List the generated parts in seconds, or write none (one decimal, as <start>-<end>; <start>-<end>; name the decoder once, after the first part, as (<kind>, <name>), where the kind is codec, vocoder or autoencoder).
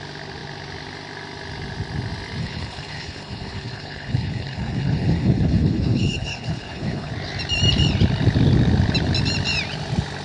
2.4-7.1 (codec, HILCodec)